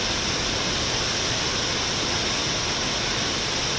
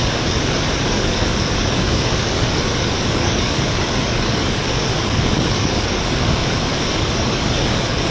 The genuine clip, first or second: first